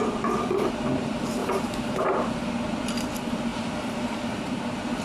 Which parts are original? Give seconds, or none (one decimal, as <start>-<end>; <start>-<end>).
0.0-1.4; 2.3-3.5